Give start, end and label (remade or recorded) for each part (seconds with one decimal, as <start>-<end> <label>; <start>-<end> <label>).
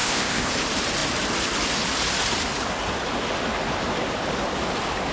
0.0-0.5 remade; 0.5-5.1 recorded